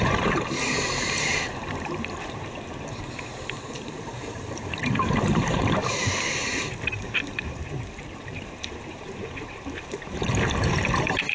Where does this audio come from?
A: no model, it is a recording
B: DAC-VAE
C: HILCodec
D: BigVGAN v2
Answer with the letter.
D